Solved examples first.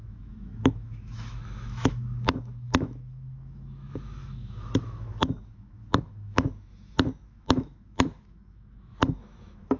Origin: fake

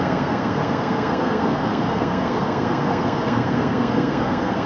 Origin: fake